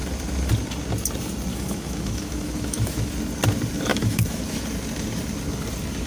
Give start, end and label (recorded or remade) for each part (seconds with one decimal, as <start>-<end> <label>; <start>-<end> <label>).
0.0-1.5 recorded; 1.5-3.1 remade; 3.1-3.9 recorded; 3.9-4.4 remade; 4.4-6.1 recorded